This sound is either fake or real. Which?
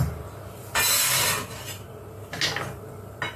real